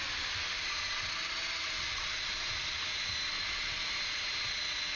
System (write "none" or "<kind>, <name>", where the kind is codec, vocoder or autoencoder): none